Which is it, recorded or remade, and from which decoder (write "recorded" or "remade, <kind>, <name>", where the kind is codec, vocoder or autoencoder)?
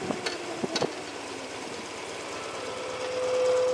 recorded